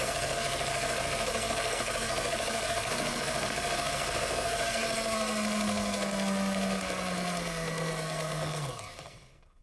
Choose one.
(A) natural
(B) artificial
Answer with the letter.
B